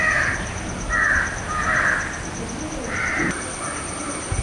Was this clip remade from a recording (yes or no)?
no